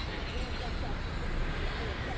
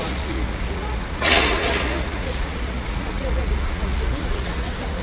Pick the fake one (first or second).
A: second